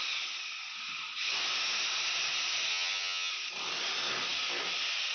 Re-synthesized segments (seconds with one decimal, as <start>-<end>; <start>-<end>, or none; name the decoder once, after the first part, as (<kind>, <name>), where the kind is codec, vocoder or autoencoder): 2.7-3.3 (vocoder, HiFi-GAN)